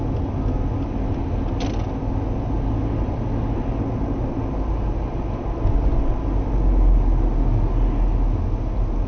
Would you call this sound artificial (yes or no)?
no